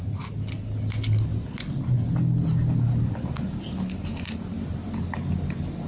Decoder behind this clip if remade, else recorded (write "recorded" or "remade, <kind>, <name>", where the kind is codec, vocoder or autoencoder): recorded